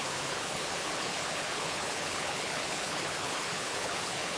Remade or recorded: remade